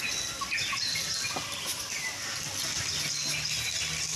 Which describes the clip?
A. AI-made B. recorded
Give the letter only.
B